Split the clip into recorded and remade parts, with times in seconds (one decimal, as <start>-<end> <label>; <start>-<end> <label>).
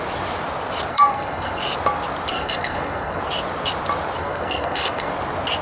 0.0-0.9 recorded; 0.9-1.6 remade; 1.6-2.3 recorded; 2.3-3.2 remade; 3.2-4.2 recorded; 4.2-5.1 remade; 5.1-5.6 recorded